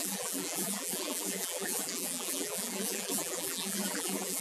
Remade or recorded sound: remade